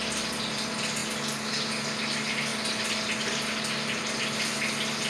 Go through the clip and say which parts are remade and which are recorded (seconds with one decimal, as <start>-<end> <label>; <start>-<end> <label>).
0.0-5.1 recorded